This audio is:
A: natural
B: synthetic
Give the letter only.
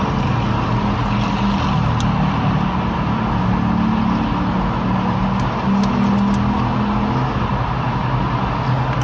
A